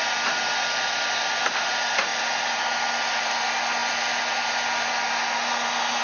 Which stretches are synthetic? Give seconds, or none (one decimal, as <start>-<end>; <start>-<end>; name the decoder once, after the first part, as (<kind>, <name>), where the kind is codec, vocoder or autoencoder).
none